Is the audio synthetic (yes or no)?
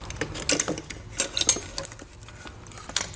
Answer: no